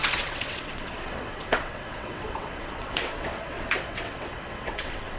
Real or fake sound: fake